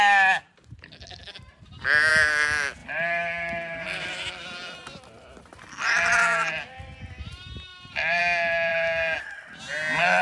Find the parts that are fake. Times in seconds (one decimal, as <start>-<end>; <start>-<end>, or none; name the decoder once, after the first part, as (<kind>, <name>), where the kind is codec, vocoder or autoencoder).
7.7-8.2 (vocoder, BigVGAN v2)